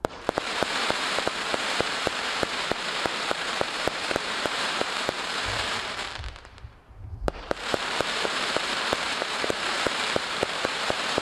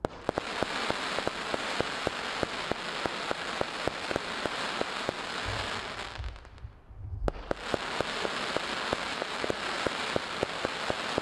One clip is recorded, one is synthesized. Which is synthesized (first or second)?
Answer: first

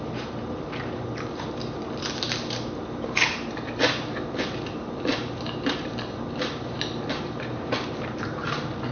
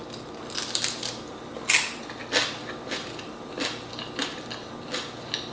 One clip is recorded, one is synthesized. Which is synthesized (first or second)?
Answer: first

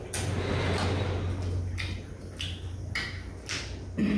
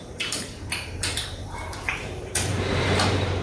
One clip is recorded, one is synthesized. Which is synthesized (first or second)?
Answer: second